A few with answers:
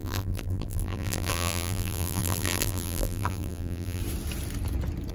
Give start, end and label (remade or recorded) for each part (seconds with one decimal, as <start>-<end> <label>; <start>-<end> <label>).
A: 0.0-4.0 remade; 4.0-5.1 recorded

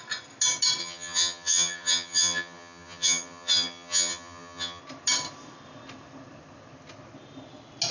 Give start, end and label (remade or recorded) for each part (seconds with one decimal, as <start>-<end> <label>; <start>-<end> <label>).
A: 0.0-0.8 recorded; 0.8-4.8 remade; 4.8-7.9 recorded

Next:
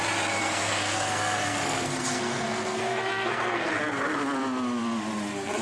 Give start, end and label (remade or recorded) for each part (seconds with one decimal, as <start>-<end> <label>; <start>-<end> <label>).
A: 0.0-0.4 recorded; 0.4-3.8 remade; 3.8-5.6 recorded

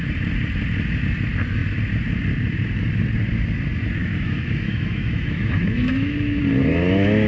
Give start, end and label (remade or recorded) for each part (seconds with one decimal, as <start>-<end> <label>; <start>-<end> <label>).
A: 0.0-4.0 recorded; 4.0-6.4 remade; 6.4-7.3 recorded